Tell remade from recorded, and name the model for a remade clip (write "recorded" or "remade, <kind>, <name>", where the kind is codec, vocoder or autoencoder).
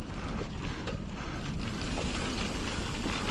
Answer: recorded